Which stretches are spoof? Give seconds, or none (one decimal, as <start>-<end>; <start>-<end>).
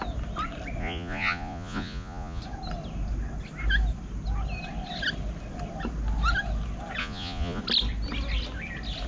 0.8-2.4; 7.0-7.6